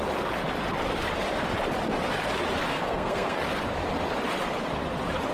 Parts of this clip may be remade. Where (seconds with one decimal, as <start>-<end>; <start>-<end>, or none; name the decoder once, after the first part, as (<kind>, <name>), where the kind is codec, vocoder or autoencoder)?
2.7-3.4 (codec, SNAC)